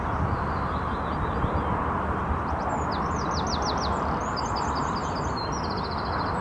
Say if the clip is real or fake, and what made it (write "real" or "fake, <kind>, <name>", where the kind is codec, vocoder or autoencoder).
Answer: real